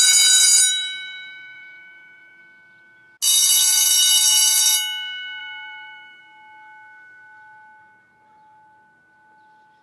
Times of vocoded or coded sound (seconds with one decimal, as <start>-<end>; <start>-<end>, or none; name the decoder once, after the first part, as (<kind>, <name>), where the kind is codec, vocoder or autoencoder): 0.7-2.4 (vocoder, BigVGAN v2); 5.4-6.2